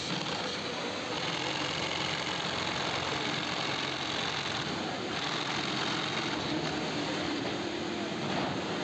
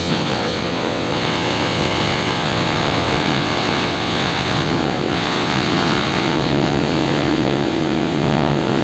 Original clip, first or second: first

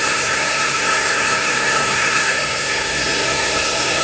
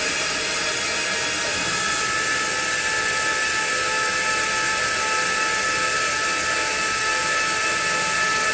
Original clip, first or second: second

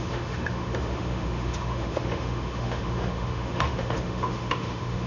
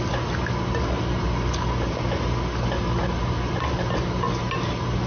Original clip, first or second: second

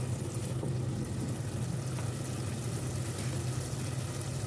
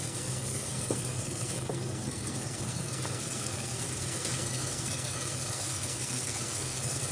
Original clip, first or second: first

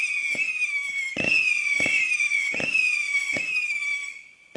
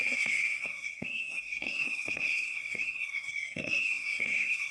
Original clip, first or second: first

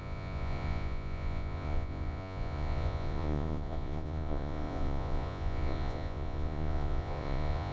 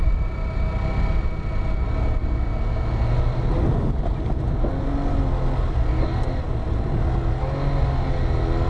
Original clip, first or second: second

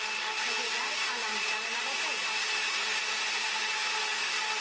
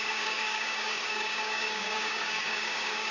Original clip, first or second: first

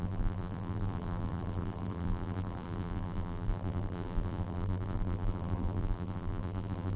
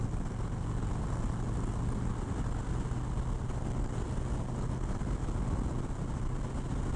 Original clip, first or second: second